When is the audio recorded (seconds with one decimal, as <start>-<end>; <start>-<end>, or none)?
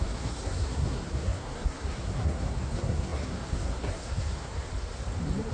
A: 4.7-5.5